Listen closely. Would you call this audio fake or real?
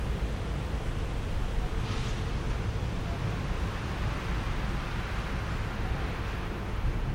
real